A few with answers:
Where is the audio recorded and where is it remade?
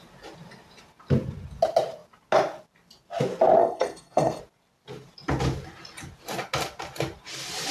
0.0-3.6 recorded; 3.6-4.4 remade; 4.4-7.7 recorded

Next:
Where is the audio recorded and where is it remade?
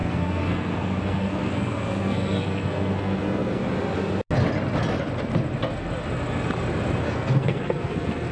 0.0-3.6 remade; 3.6-7.0 recorded; 7.0-8.3 remade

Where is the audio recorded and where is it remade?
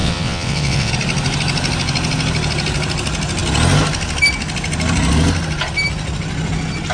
0.0-0.9 remade; 0.9-6.9 recorded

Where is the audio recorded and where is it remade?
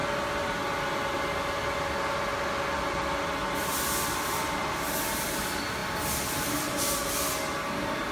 0.0-8.1 recorded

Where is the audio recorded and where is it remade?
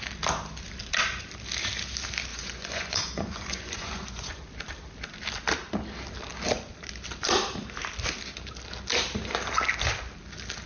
0.0-2.3 recorded; 2.3-4.4 remade; 4.4-10.7 recorded